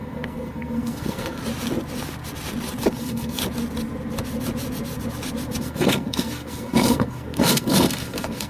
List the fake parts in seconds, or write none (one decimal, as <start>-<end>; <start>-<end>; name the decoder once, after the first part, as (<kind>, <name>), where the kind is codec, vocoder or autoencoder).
0.0-1.4 (codec, SNAC); 2.9-3.4; 5.6-8.5